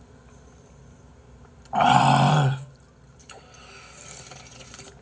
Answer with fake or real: real